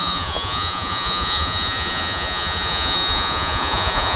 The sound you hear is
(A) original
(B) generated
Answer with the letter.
B